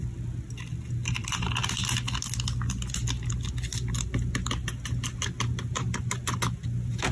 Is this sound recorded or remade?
recorded